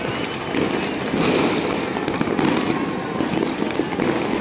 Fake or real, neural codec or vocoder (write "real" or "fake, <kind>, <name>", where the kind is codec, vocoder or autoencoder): real